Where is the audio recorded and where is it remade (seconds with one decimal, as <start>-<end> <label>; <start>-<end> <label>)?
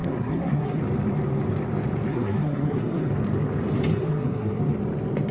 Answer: 0.0-0.8 remade; 0.8-2.1 recorded; 2.1-3.1 remade; 3.1-3.9 recorded; 3.9-4.6 remade; 4.6-5.3 recorded